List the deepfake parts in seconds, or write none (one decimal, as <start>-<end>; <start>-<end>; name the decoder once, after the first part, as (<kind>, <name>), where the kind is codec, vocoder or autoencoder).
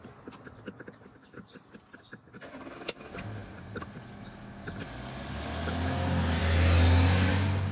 none